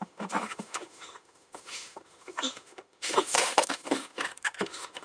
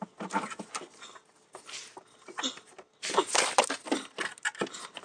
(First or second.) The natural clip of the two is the second